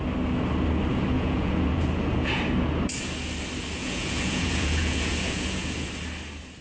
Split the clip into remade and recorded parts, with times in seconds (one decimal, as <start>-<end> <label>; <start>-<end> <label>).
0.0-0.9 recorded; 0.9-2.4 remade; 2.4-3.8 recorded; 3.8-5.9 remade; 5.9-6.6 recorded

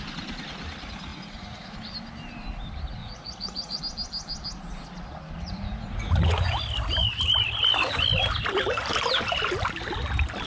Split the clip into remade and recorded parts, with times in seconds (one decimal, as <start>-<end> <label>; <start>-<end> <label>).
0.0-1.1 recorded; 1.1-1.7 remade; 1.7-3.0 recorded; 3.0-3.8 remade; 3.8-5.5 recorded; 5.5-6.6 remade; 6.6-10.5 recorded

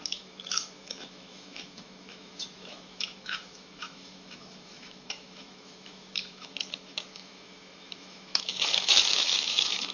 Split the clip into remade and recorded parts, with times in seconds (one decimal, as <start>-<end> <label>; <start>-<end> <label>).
0.0-9.9 remade

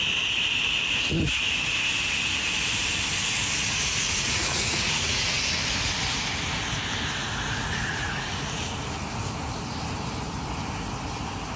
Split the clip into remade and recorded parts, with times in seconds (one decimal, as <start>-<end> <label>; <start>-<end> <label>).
0.0-3.6 recorded; 3.6-5.4 remade; 5.4-7.2 recorded; 7.2-8.7 remade; 8.7-11.6 recorded

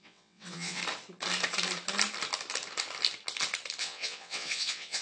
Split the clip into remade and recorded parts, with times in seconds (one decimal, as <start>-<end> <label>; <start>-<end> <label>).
0.0-0.8 remade; 0.8-3.8 recorded; 3.8-5.0 remade